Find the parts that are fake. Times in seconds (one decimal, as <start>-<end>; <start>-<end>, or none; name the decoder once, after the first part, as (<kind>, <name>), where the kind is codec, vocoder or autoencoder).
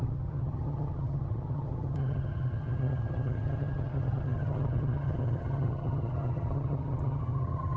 0.0-7.8 (vocoder, HiFi-GAN)